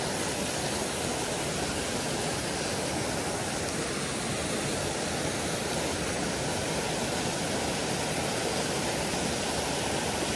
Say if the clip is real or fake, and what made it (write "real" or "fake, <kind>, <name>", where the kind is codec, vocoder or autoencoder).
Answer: real